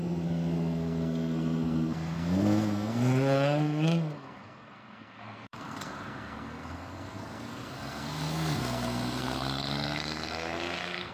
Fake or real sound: fake